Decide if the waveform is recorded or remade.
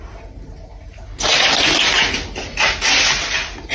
recorded